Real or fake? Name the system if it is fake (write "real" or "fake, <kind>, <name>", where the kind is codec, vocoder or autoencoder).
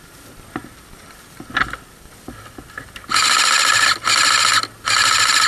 real